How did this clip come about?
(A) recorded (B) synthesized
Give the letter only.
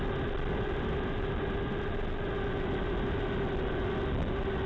A